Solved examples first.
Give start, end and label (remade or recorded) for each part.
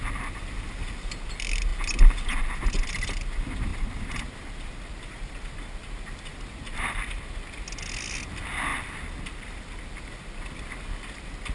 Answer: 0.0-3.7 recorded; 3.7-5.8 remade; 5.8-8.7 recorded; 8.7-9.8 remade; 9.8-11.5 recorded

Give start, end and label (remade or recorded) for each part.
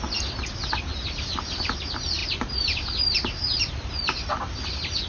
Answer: 0.0-2.2 recorded; 2.2-4.3 remade; 4.3-5.1 recorded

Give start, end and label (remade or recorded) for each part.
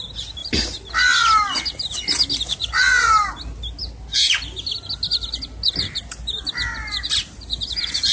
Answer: 0.0-8.1 recorded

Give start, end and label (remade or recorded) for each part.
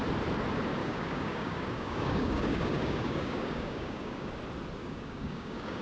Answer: 0.0-0.8 recorded; 0.8-4.3 remade; 4.3-4.8 recorded; 4.8-5.8 remade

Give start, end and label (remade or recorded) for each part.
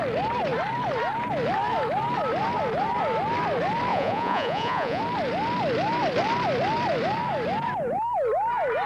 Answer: 0.0-3.9 recorded; 3.9-5.0 remade; 5.0-8.9 recorded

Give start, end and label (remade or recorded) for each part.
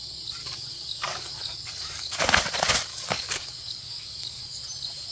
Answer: 0.0-0.4 recorded; 0.4-2.4 remade; 2.4-2.9 recorded; 2.9-4.6 remade; 4.6-5.1 recorded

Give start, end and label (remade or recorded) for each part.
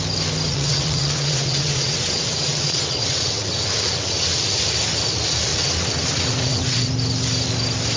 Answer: 0.0-0.5 recorded; 0.5-4.6 remade; 4.6-5.5 recorded; 5.5-6.9 remade; 6.9-8.0 recorded